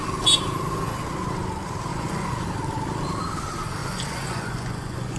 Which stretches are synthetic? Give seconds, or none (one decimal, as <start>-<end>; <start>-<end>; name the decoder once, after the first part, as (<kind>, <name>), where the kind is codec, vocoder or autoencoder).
1.9-2.5 (vocoder, Vocos); 3.8-5.2